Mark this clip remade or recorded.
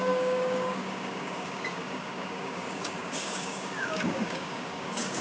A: remade